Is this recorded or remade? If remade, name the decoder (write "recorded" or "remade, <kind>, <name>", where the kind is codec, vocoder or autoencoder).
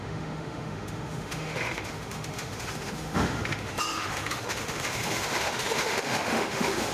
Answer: remade, autoencoder, DAC-VAE